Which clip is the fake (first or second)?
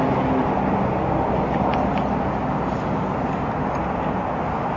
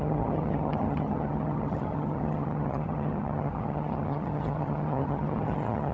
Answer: second